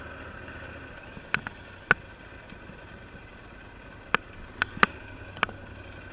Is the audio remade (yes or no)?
no